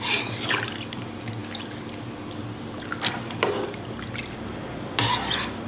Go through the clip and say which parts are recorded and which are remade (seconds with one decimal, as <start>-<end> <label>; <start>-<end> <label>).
0.0-5.7 recorded